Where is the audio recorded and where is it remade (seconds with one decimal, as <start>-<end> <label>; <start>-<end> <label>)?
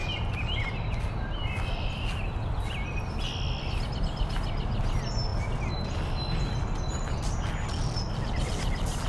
0.0-9.1 recorded